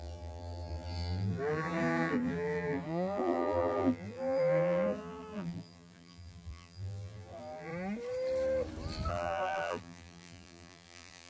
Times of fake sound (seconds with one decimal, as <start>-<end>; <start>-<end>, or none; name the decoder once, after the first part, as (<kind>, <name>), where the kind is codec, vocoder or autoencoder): 0.0-7.7 (vocoder, BigVGAN v2); 9.1-11.3